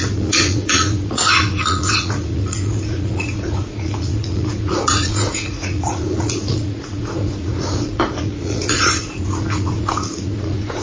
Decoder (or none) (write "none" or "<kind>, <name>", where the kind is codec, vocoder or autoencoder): vocoder, Vocos